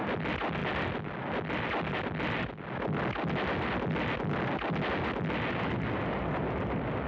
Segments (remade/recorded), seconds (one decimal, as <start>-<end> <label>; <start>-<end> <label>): 0.0-7.1 recorded